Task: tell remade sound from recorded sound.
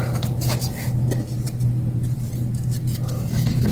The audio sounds recorded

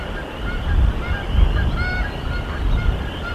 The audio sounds recorded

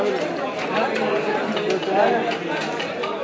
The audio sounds recorded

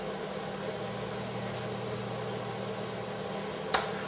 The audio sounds recorded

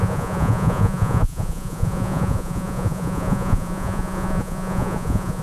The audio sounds remade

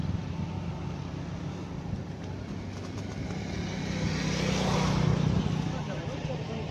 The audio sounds recorded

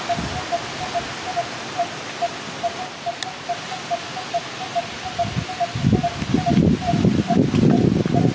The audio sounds recorded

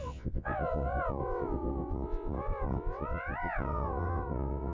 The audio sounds remade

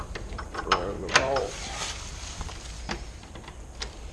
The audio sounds remade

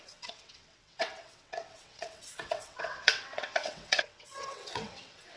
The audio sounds remade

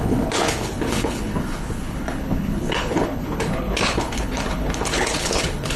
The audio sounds remade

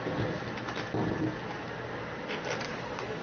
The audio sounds recorded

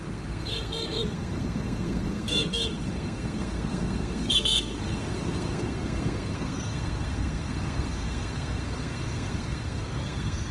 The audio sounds remade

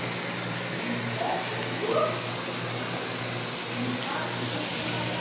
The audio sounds recorded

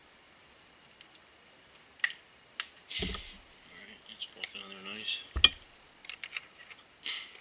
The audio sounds recorded